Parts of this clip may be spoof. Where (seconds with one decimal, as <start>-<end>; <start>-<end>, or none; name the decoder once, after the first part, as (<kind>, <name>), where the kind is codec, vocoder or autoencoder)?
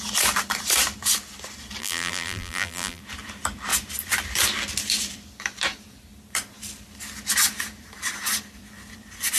1.8-3.0 (vocoder, BigVGAN v2)